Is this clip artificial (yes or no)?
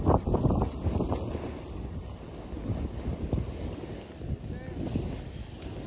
no